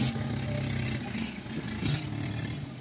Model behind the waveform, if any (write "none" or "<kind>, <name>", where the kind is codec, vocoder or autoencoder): none